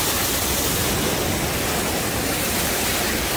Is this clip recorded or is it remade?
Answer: recorded